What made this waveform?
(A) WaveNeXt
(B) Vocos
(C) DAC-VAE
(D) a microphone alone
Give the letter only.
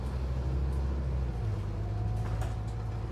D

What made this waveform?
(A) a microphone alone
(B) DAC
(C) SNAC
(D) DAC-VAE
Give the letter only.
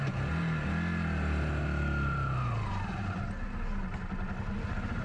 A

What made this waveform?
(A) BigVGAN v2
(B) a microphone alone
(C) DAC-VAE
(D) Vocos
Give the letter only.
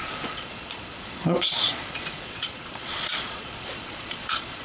D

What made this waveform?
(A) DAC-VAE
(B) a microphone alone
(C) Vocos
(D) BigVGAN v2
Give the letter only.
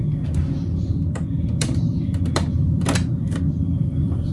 B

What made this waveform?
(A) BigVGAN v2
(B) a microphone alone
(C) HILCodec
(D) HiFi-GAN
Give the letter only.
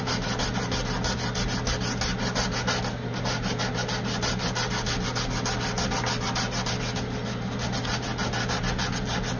B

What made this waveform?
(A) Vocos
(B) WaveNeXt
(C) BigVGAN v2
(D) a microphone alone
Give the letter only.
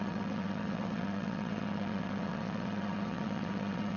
B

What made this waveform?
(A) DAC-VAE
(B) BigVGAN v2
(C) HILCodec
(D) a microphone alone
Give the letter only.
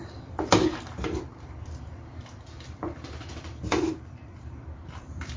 B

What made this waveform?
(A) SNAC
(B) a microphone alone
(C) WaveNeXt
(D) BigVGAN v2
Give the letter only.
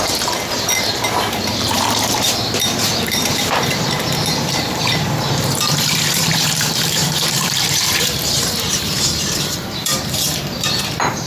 D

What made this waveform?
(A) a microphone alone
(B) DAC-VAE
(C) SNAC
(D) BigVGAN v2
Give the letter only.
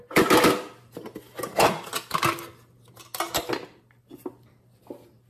A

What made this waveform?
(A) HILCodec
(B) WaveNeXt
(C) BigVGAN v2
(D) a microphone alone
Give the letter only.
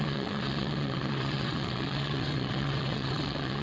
B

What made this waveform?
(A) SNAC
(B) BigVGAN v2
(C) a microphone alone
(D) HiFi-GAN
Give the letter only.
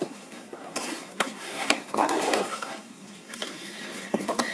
A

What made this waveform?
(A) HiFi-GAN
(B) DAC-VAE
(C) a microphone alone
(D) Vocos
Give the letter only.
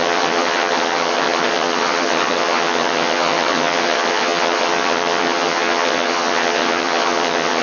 A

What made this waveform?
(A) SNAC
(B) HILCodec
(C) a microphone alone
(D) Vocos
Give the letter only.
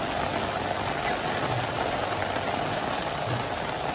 C